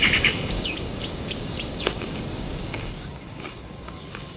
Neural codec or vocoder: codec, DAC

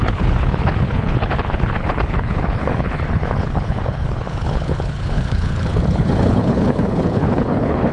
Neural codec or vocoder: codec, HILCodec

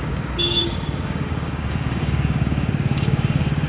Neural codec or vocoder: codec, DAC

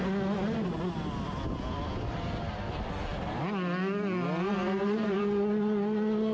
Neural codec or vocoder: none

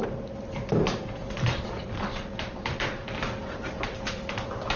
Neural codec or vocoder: vocoder, BigVGAN v2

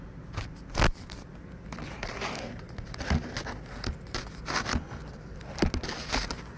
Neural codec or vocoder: none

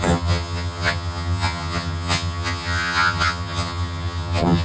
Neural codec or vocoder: vocoder, HiFi-GAN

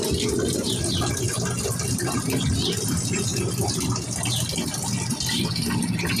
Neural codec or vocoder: vocoder, BigVGAN v2